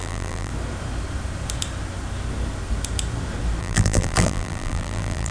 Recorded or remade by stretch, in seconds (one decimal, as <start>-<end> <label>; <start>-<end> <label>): 0.0-0.5 remade; 0.5-3.6 recorded; 3.6-5.3 remade